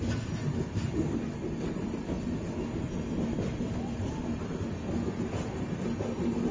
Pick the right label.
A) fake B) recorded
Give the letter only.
B